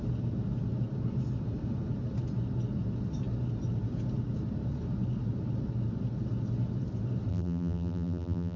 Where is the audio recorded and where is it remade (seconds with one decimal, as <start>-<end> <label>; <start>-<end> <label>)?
0.0-7.3 recorded; 7.3-8.6 remade